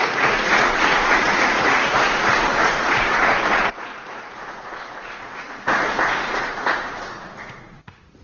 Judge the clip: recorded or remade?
remade